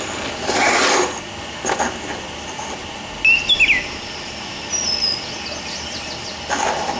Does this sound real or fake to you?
real